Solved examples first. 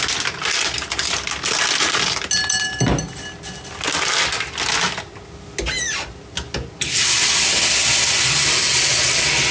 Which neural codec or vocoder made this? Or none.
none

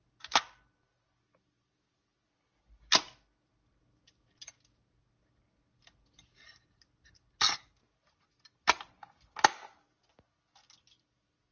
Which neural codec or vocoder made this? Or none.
none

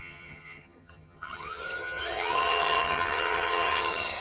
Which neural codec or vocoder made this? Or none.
vocoder, HiFi-GAN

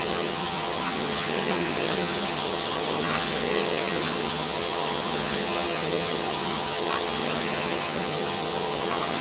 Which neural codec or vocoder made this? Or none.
vocoder, HiFi-GAN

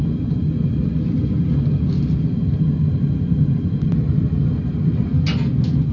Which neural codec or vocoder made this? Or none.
none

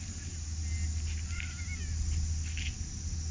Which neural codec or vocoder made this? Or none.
none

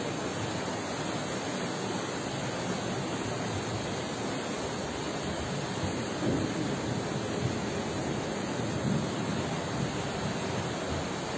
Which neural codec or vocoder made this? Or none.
none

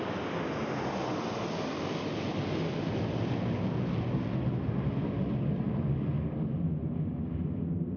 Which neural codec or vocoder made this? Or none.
none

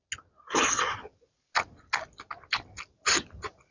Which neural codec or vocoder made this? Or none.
none